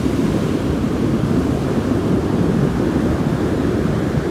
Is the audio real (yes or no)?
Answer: yes